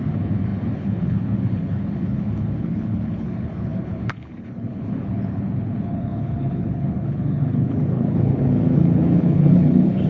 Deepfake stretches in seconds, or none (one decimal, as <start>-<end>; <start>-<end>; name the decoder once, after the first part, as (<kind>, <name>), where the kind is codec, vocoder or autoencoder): 0.0-10.1 (codec, HILCodec)